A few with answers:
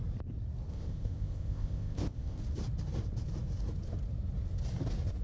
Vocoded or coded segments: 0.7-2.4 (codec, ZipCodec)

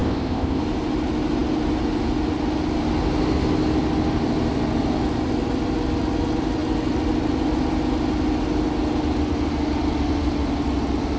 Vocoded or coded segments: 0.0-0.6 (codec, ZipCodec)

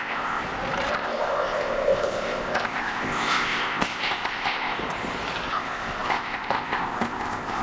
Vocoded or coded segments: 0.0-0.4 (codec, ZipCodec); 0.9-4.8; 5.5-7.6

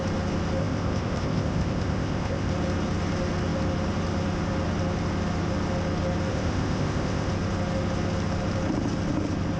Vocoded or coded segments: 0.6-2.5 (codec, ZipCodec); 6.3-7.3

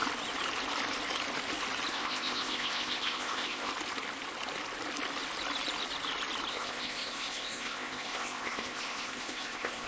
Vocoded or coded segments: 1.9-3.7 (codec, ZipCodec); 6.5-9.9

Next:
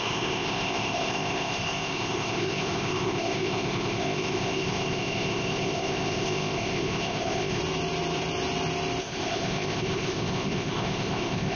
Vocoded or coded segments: 0.0-7.6 (codec, ZipCodec); 9.0-11.5